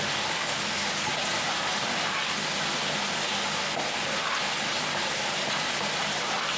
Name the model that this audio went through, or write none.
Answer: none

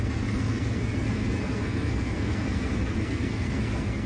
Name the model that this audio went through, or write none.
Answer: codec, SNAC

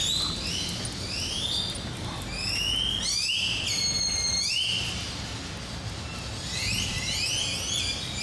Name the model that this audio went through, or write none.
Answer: none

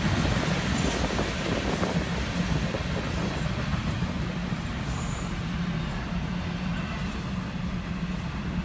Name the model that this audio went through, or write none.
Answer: none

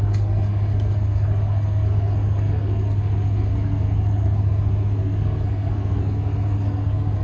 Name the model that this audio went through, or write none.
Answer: codec, SNAC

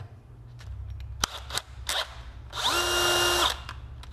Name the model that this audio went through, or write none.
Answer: none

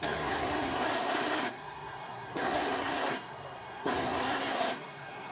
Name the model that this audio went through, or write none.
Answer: codec, SNAC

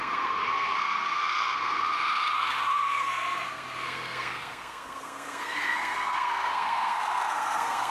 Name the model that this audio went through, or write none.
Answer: codec, SNAC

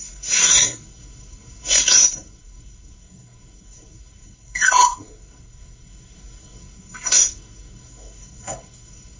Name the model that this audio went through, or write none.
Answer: codec, SNAC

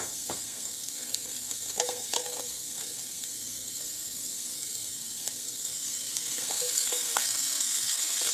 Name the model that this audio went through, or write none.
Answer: codec, SNAC